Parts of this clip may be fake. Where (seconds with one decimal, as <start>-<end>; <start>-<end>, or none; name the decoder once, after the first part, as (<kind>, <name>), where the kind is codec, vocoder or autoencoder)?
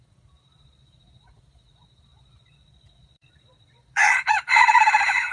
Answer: 0.0-5.3 (vocoder, Vocos)